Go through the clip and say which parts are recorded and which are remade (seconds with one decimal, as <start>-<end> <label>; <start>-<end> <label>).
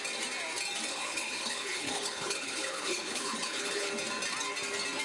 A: 0.0-0.9 recorded; 0.9-3.9 remade; 3.9-5.0 recorded